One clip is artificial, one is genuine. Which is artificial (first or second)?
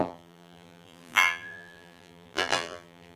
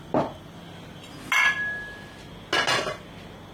first